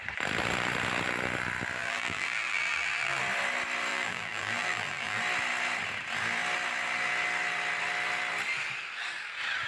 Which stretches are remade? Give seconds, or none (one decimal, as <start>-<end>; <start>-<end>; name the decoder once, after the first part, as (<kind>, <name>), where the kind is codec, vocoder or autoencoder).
1.8-3.2 (vocoder, BigVGAN v2); 3.9-5.2